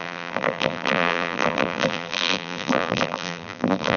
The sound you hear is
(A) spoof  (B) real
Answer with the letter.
A